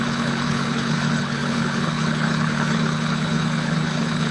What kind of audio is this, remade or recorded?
remade